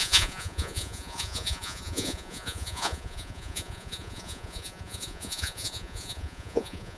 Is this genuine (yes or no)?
no